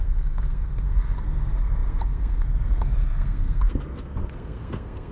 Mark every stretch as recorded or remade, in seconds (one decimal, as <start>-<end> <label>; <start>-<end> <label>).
0.0-5.1 remade